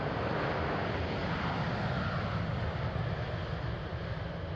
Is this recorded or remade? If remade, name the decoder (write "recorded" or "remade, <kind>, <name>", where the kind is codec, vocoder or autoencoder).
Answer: recorded